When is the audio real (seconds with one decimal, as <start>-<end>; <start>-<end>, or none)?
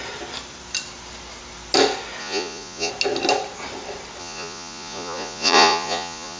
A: 0.0-2.2; 2.9-4.2